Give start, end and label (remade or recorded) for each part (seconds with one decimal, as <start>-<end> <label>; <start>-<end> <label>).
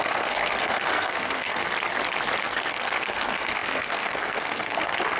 0.0-1.6 remade; 1.6-2.4 recorded; 2.4-5.2 remade